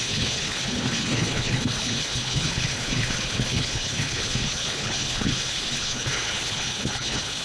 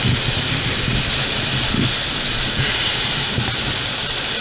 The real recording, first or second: second